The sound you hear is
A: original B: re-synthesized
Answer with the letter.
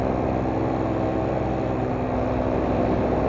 A